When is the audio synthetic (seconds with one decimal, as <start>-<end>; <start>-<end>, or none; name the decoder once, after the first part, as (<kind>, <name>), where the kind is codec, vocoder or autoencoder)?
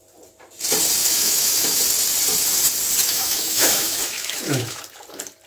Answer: 1.0-1.8 (autoencoder, DAC-VAE); 3.0-4.8